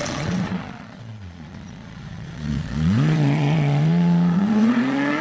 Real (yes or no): no